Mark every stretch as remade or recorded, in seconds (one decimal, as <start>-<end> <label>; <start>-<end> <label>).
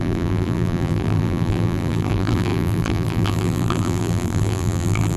0.0-5.2 remade